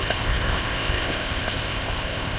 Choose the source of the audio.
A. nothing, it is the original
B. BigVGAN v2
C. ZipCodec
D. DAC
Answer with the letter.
C